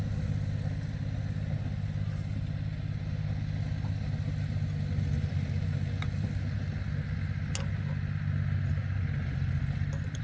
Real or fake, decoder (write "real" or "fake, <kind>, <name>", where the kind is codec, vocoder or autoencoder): real